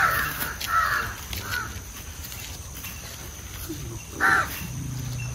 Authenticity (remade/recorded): recorded